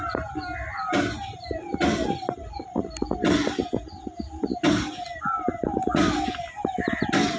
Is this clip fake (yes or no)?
no